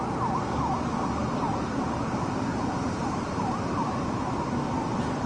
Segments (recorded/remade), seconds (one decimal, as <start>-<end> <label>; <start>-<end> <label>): 0.0-1.2 recorded; 1.2-4.4 remade; 4.4-5.3 recorded